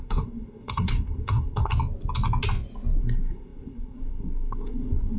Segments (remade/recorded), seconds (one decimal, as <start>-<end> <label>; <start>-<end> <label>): 0.0-1.7 remade; 1.7-3.0 recorded; 3.0-5.2 remade